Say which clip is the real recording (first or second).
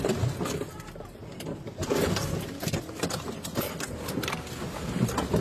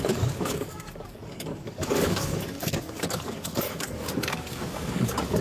first